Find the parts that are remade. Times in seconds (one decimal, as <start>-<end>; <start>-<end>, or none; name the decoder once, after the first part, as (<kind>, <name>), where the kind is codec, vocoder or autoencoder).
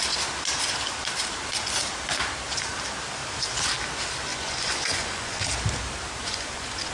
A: 4.3-5.5 (vocoder, Vocos); 6.2-6.9